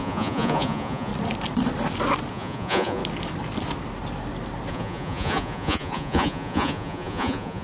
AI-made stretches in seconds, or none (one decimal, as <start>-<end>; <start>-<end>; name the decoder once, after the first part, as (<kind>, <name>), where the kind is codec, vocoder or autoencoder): 0.0-1.1 (vocoder, Vocos); 2.3-3.0; 4.7-7.6